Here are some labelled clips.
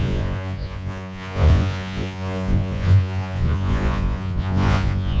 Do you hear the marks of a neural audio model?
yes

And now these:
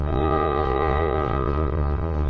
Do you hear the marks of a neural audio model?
yes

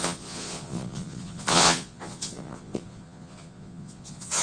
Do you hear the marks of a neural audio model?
yes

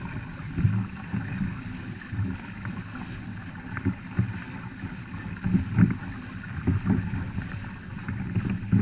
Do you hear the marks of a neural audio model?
no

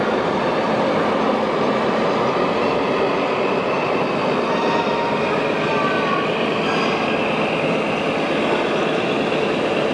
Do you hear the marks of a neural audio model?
no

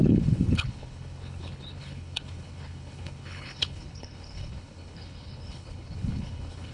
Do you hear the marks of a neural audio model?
yes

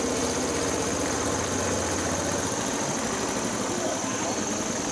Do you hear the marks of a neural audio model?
no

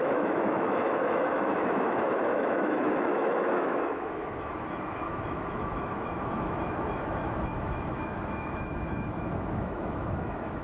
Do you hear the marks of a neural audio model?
yes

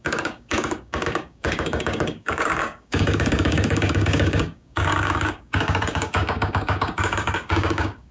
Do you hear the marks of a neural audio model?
yes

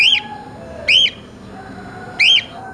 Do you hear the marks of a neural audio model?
no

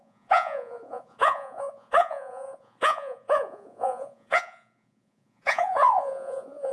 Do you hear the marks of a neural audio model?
yes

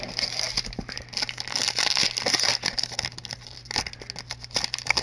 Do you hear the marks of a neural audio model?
no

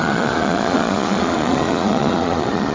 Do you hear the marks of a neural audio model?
yes